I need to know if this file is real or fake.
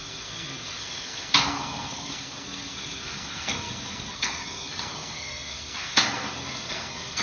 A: fake